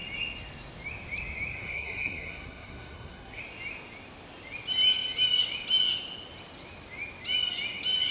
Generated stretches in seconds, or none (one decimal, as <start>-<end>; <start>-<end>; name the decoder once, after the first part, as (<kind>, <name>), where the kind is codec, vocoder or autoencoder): 1.6-3.4 (codec, SNAC)